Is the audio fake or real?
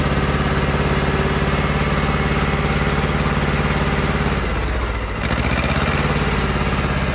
real